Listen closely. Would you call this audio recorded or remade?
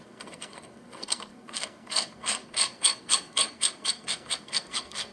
remade